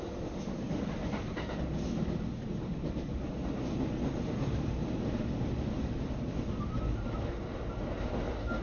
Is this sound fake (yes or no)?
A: no